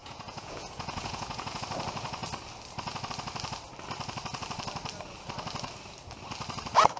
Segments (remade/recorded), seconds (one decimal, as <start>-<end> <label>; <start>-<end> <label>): 0.0-1.6 remade; 1.6-7.0 recorded